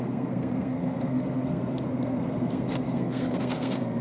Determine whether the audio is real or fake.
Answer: fake